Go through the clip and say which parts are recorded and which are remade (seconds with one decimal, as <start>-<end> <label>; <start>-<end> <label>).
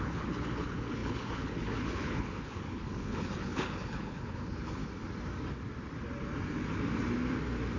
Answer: 0.0-4.8 remade; 4.8-7.8 recorded